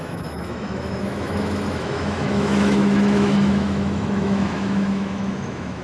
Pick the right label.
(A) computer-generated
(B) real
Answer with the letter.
A